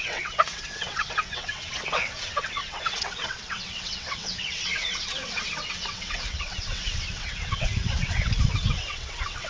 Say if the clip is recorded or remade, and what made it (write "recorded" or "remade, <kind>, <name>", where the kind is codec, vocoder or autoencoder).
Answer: remade, vocoder, WaveNeXt